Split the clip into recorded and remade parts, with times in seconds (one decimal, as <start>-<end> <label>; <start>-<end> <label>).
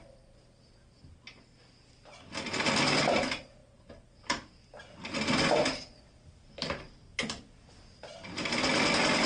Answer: 0.0-3.6 recorded; 3.6-4.7 remade; 4.7-5.8 recorded; 5.8-7.5 remade; 7.5-9.3 recorded